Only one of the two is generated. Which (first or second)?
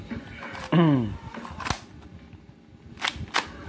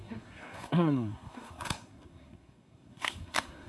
second